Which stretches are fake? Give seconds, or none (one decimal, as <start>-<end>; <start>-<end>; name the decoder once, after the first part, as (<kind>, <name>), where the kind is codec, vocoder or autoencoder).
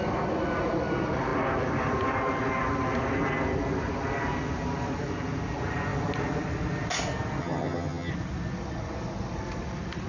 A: 7.4-8.1 (vocoder, HiFi-GAN)